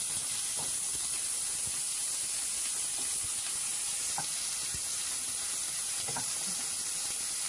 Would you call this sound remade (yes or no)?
no